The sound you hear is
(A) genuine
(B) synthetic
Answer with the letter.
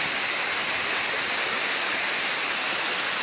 A